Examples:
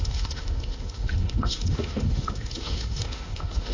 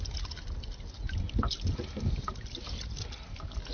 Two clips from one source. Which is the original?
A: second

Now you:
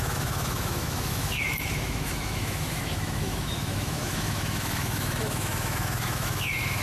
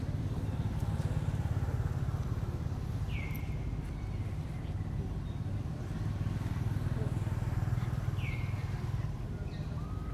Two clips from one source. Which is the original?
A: second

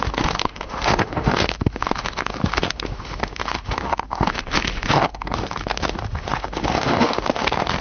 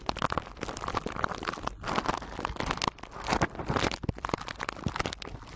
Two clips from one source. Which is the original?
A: second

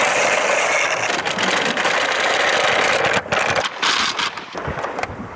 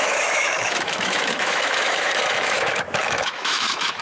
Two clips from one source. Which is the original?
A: first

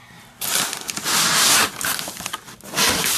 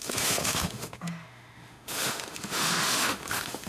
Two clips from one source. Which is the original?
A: first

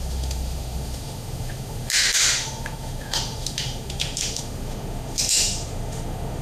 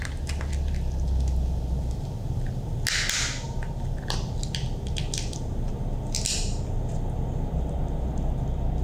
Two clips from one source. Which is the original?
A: second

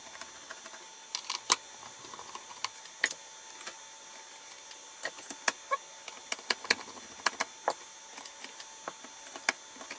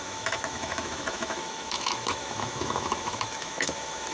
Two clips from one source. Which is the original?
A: first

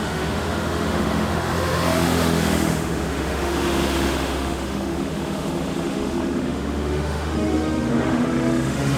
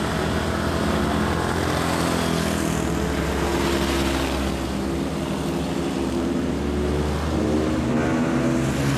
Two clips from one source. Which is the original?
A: second